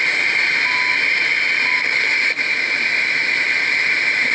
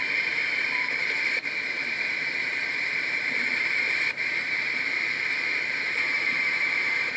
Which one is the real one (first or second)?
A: first